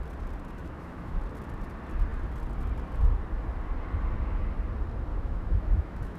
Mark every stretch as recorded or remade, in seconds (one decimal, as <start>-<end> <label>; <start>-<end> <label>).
0.0-0.6 recorded; 0.6-1.2 remade; 1.2-5.1 recorded; 5.1-6.2 remade